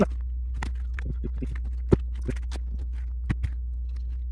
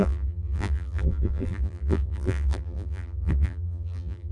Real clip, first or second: first